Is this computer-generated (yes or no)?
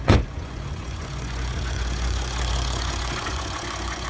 yes